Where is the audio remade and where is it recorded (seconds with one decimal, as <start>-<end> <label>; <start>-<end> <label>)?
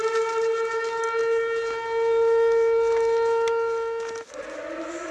0.0-5.1 recorded